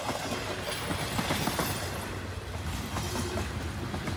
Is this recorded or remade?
recorded